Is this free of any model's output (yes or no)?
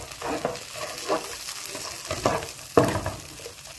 yes